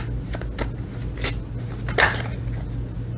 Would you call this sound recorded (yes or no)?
yes